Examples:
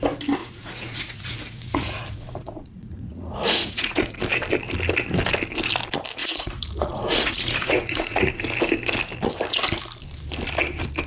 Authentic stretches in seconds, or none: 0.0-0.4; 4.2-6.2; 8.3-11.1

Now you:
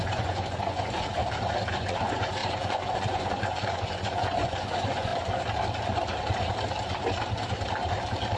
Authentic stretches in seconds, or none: 1.2-1.7; 5.1-8.4

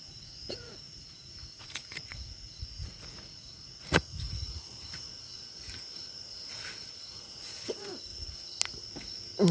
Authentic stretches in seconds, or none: 5.1-7.1; 8.1-9.5

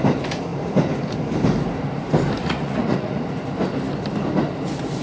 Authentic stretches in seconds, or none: 0.0-2.4; 3.2-5.0

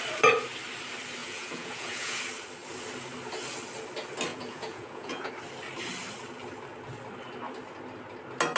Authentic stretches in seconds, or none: 0.0-1.2; 2.2-4.3; 5.3-8.6

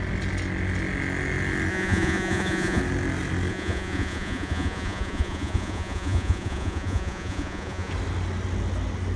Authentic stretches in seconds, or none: 0.0-1.7; 2.8-3.5; 7.9-9.2

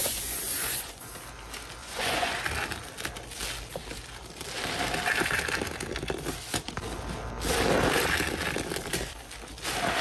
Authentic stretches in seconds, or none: 1.1-1.8; 2.4-10.0

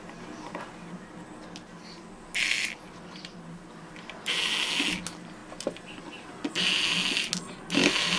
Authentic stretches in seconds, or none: 0.0-8.2